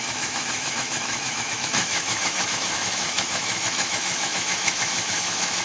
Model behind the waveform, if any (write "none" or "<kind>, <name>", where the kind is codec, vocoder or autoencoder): autoencoder, DAC-VAE